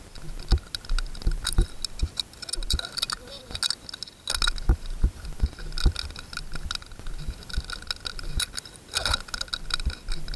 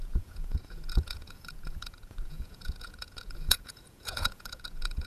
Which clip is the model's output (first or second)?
second